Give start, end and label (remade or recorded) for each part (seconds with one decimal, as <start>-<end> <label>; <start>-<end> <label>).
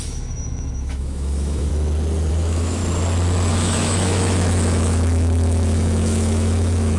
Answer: 0.0-1.7 remade; 1.7-2.3 recorded; 2.3-2.8 remade; 2.8-3.5 recorded; 3.5-7.0 remade